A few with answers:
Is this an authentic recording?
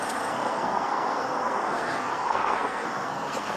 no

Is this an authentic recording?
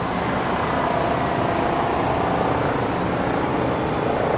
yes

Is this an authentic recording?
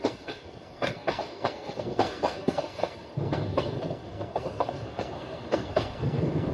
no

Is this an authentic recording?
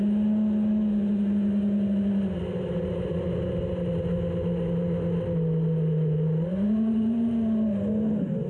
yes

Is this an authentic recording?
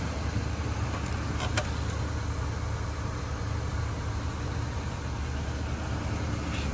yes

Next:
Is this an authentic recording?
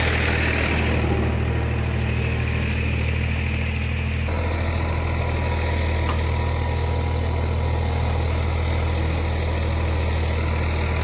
yes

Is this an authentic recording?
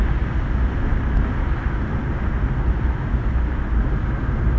yes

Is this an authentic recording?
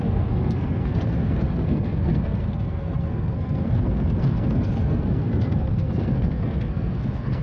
no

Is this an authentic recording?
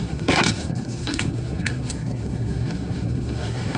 no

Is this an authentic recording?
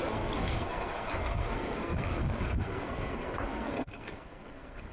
no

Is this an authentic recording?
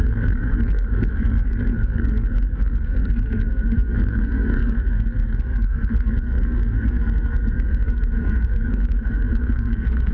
no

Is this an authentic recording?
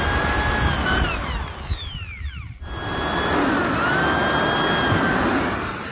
yes